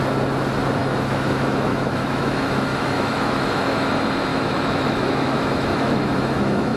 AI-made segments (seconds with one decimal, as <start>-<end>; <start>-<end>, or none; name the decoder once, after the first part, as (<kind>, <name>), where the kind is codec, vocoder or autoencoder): 0.8-3.9 (autoencoder, DAC-VAE); 4.3-6.8